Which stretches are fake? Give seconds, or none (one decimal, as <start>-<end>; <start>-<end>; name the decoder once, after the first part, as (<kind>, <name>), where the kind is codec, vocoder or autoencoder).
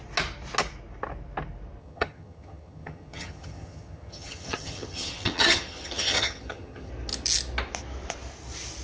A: 1.8-6.9 (vocoder, HiFi-GAN)